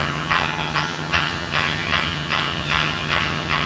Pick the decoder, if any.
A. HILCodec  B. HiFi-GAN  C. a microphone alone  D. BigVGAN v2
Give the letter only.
B